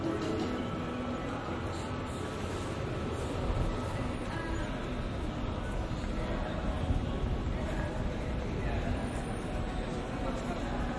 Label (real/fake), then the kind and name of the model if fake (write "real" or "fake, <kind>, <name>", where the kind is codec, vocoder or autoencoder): real